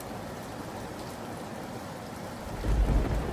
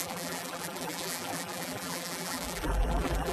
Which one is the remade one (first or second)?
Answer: second